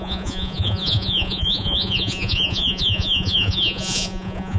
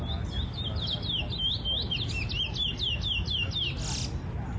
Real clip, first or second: second